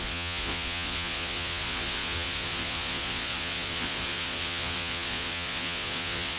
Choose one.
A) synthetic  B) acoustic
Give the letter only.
A